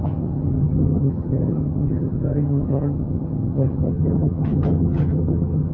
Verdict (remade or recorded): remade